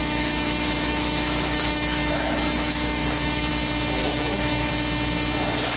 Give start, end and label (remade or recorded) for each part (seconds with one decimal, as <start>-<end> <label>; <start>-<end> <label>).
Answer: 0.0-3.5 remade; 3.5-4.0 recorded; 4.0-4.7 remade; 4.7-5.8 recorded